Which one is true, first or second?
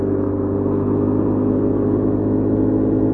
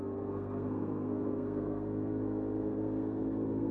first